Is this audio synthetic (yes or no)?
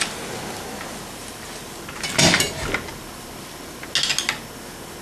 no